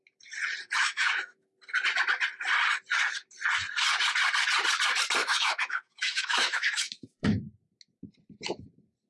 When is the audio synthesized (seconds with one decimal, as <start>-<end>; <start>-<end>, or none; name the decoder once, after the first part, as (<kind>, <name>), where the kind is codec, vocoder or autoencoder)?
0.8-1.6 (autoencoder, DAC-VAE); 5.2-7.5